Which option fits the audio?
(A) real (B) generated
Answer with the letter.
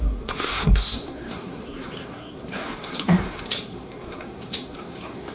B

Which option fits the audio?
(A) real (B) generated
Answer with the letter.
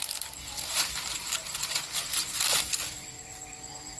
A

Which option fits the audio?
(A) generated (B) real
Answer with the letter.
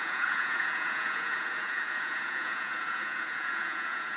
A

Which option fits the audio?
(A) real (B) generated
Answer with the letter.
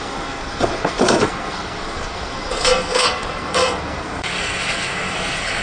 B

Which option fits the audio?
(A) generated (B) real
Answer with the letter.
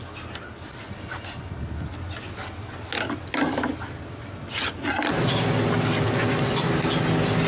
B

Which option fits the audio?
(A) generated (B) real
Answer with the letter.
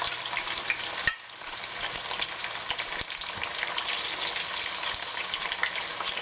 A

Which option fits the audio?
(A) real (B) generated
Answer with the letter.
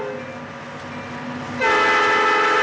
A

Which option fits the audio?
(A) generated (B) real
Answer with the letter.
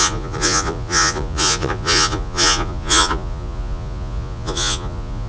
A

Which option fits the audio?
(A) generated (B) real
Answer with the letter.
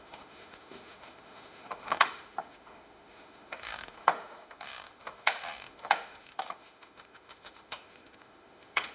A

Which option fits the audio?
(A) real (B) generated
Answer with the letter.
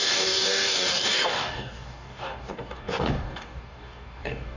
B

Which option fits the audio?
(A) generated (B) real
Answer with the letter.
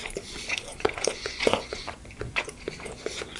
A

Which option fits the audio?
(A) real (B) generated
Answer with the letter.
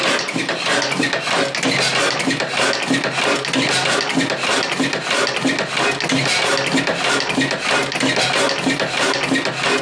A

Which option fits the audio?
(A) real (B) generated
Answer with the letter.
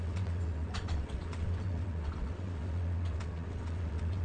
B